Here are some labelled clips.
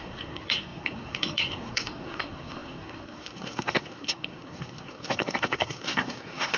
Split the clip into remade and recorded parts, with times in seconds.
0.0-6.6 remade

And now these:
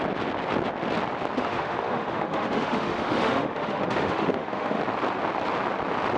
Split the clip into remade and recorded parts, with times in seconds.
0.0-1.4 recorded; 1.4-4.8 remade; 4.8-6.2 recorded

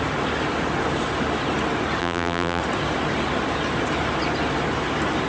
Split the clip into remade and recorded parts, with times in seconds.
0.0-2.0 recorded; 2.0-2.6 remade; 2.6-5.3 recorded

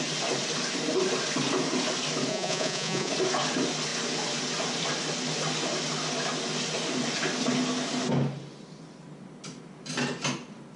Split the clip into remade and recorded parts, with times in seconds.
0.0-2.3 recorded; 2.3-3.1 remade; 3.1-10.8 recorded

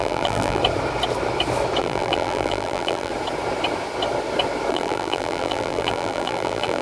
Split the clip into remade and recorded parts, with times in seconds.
0.0-0.6 remade; 0.6-1.8 recorded; 1.8-3.1 remade; 3.1-4.7 recorded; 4.7-6.8 remade